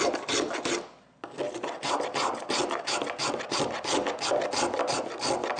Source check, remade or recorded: recorded